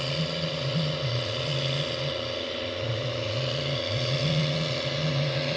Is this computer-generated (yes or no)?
no